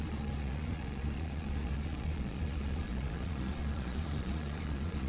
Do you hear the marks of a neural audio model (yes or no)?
yes